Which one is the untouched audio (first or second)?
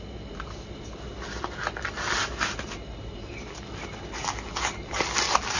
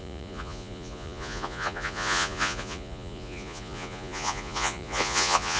first